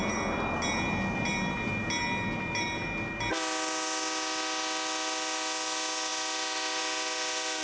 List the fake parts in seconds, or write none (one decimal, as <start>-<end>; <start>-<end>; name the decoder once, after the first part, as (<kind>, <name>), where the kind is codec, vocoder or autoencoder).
none